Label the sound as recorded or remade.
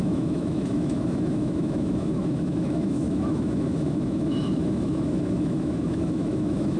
remade